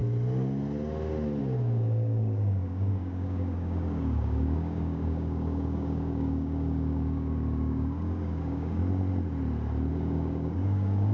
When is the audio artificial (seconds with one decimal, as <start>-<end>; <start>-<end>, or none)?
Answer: 1.4-8.8; 9.9-11.1